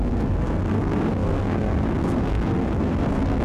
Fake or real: fake